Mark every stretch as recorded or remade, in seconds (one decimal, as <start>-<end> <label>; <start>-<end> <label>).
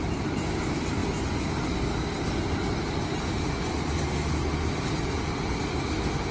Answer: 0.0-6.3 recorded